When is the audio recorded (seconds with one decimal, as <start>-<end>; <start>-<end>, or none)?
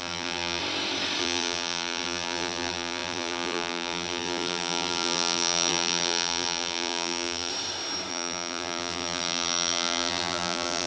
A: 0.6-1.2; 7.5-8.1